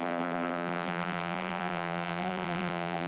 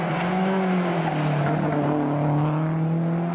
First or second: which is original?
second